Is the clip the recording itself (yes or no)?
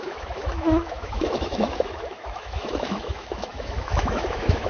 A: no